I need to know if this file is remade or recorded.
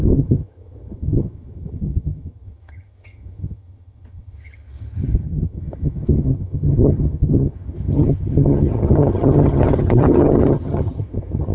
remade